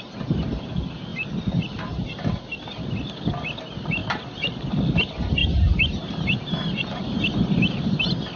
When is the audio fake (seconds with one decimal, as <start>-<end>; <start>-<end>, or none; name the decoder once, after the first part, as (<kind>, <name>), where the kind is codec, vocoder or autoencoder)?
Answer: 4.0-4.5 (vocoder, BigVGAN v2); 5.4-8.0